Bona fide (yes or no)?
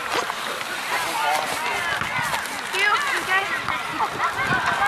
yes